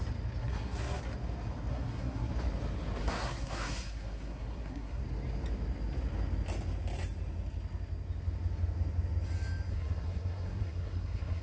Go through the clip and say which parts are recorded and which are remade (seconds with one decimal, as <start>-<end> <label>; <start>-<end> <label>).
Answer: 0.0-0.4 recorded; 0.4-1.0 remade; 1.0-1.7 recorded; 1.7-2.3 remade; 2.3-3.0 recorded; 3.0-5.0 remade; 5.0-9.7 recorded; 9.7-11.4 remade